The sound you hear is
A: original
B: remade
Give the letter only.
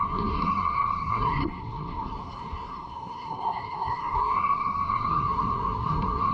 B